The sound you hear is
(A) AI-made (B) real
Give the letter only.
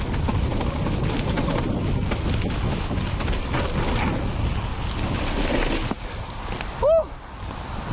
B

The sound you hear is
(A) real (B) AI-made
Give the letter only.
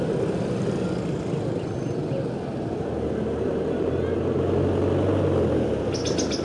A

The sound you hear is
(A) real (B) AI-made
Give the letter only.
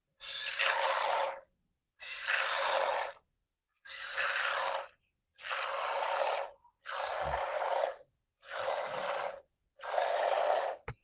A